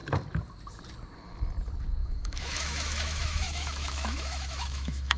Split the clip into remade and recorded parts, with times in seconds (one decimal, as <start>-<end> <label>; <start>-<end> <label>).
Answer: 0.0-2.0 recorded; 2.0-5.2 remade